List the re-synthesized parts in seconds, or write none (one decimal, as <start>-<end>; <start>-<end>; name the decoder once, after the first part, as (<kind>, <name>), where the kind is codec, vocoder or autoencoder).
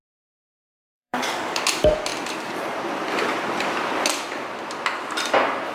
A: 0.7-1.6 (codec, DAC)